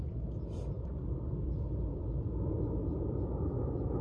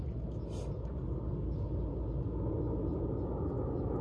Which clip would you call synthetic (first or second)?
first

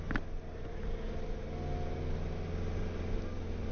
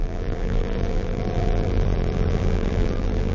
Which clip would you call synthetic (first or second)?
second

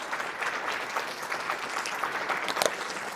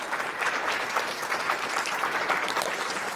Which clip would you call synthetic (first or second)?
second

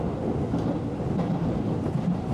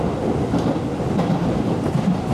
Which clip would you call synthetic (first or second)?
second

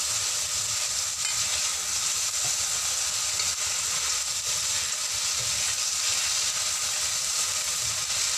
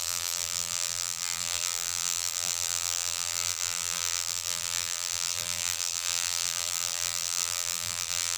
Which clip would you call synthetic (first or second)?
second